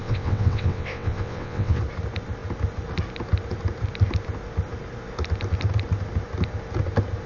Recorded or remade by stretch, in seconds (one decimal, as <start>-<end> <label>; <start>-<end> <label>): 0.0-1.8 remade; 1.8-7.3 recorded